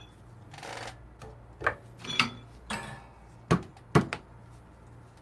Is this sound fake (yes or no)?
no